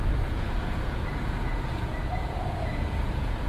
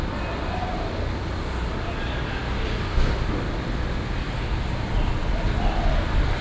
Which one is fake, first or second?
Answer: first